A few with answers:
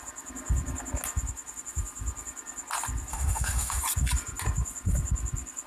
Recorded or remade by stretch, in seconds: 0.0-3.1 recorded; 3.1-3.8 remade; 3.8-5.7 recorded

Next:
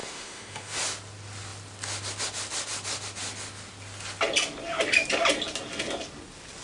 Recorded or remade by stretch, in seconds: 0.0-0.8 remade; 0.8-6.6 recorded

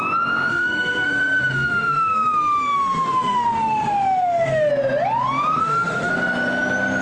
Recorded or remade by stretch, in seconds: 0.0-0.5 recorded; 0.5-4.7 remade; 4.7-5.6 recorded; 5.6-6.1 remade; 6.1-7.0 recorded

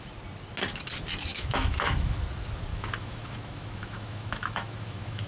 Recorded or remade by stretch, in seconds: 0.0-1.3 recorded; 1.3-2.2 remade; 2.2-2.7 recorded; 2.7-5.3 remade

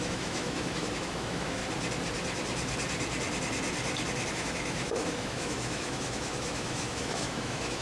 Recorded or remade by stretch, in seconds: 0.0-1.6 remade; 1.6-4.3 recorded; 4.3-7.8 remade

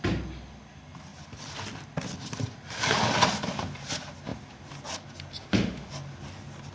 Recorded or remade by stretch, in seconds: 0.0-5.4 recorded; 5.4-5.9 remade; 5.9-6.7 recorded

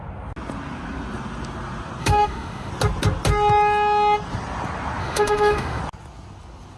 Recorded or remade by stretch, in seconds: 0.0-2.0 recorded; 2.0-2.7 remade; 2.7-5.0 recorded; 5.0-5.8 remade; 5.8-6.8 recorded

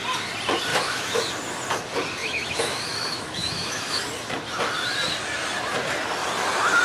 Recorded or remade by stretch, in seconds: 0.0-0.7 recorded; 0.7-1.3 remade; 1.3-2.2 recorded; 2.2-4.0 remade; 4.0-6.8 recorded